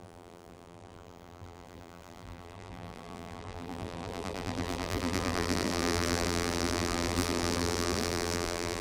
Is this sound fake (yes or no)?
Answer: yes